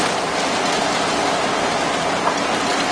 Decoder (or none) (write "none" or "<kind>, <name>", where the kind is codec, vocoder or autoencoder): none